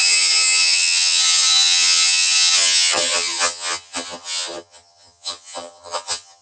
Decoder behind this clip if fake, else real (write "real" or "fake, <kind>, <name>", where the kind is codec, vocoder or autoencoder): fake, vocoder, HiFi-GAN